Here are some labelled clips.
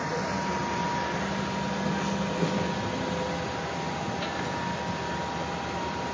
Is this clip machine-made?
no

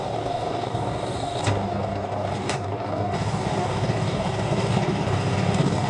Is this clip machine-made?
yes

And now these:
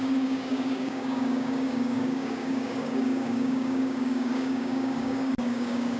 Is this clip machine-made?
yes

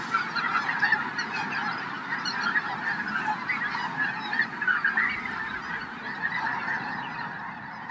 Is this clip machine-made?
no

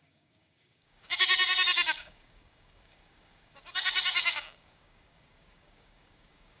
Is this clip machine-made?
yes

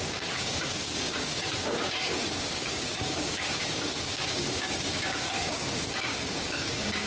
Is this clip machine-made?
yes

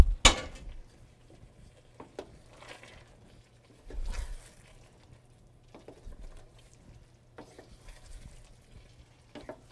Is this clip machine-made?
no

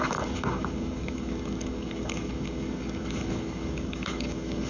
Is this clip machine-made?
yes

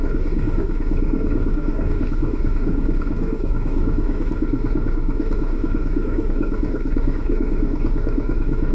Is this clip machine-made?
yes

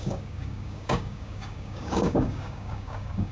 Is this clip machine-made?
yes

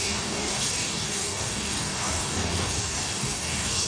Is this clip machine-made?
yes